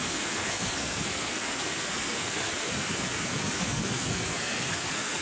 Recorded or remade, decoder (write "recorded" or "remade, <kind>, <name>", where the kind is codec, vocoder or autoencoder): remade, codec, SNAC